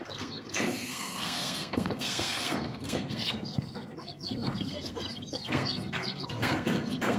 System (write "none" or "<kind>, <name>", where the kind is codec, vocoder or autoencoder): codec, SNAC